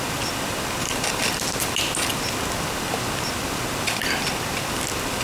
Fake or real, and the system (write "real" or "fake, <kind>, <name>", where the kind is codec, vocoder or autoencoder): real